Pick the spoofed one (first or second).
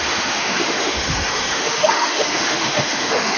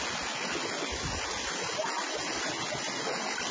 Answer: first